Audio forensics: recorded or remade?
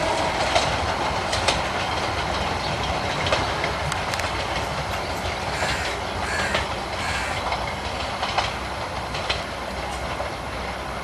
recorded